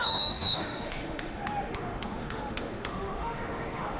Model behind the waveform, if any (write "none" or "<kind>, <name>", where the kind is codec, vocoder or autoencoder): autoencoder, DAC-VAE